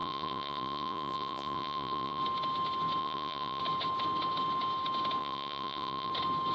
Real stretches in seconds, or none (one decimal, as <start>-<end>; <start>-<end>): 2.2-3.0; 3.6-5.2; 6.1-6.5